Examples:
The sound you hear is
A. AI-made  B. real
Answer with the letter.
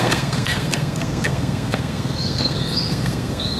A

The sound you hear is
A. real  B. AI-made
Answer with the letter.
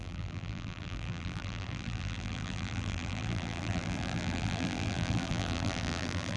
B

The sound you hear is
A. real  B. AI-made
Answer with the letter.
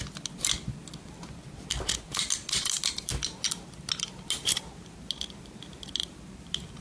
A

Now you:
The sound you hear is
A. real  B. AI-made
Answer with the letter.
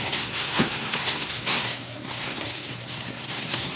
B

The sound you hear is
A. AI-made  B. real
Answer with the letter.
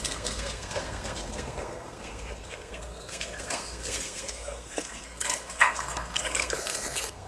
A